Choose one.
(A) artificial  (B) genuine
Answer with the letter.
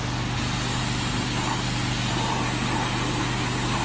B